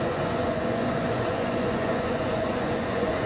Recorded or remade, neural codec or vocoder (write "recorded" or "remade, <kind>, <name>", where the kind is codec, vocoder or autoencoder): remade, vocoder, Vocos